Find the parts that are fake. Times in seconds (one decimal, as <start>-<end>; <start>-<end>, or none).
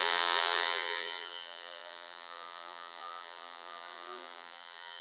0.0-5.0